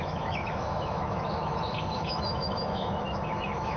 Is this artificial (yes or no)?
yes